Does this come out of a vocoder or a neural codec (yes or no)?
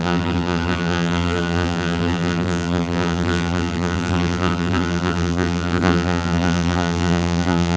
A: yes